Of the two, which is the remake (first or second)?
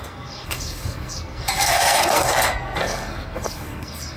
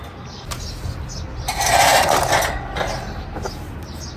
first